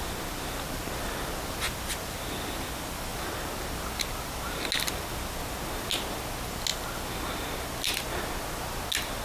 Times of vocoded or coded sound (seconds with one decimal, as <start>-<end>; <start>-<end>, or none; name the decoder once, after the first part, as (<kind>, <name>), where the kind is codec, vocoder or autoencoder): none

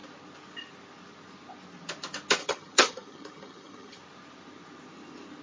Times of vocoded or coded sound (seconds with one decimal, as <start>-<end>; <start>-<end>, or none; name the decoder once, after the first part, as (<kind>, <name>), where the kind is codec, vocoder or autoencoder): 2.4-4.0 (vocoder, HiFi-GAN)

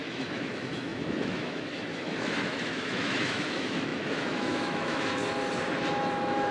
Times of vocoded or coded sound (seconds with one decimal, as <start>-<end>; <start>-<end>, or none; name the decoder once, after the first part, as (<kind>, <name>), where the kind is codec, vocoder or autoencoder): 0.0-5.2 (autoencoder, DAC-VAE); 5.9-6.5

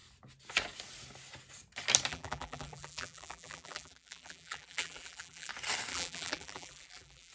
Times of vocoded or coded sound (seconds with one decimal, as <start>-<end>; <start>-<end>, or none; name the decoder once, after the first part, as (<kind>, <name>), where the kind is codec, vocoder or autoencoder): 2.1-5.5 (vocoder, BigVGAN v2); 5.9-7.3

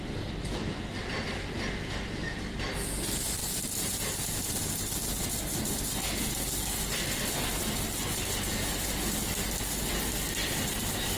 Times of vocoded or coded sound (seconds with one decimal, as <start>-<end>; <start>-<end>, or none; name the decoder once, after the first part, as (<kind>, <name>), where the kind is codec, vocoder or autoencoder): none

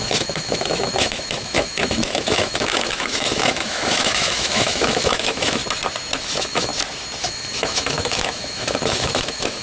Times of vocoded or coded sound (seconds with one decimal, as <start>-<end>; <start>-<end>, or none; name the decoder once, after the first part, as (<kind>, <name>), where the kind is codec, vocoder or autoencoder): 0.0-5.6 (autoencoder, DAC-VAE); 6.2-6.7; 7.2-9.6